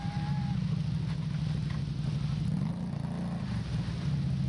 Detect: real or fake real